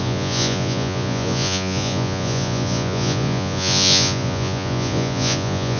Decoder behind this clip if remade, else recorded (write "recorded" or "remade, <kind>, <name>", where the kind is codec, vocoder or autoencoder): remade, vocoder, Vocos